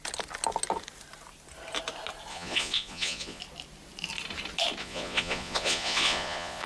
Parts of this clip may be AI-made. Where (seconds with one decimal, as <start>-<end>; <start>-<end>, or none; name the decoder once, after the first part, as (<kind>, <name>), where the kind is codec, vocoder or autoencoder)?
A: 2.3-3.4 (vocoder, Vocos); 4.8-6.7